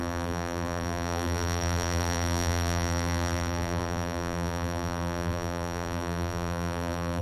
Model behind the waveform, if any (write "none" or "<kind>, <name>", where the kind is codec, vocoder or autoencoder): vocoder, BigVGAN v2